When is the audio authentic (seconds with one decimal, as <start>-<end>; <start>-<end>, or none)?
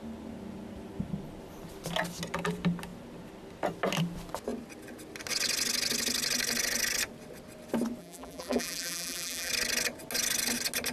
0.0-8.0; 9.5-10.9